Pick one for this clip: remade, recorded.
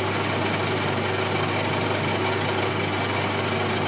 recorded